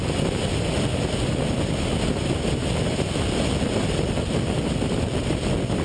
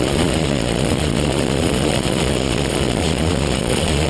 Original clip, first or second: first